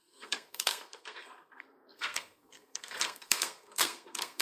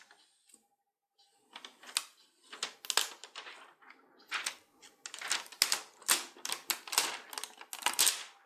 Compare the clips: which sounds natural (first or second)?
second